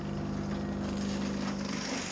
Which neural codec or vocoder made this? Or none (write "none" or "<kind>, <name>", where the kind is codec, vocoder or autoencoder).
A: none